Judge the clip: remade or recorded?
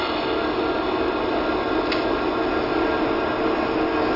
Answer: recorded